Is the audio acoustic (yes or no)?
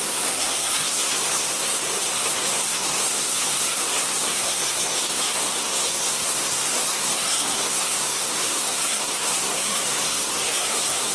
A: no